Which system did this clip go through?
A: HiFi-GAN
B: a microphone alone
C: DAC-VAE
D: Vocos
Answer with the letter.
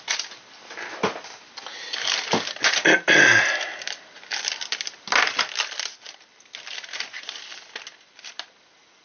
B